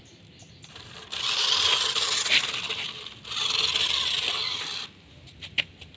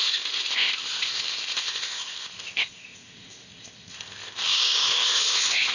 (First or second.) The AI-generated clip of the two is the second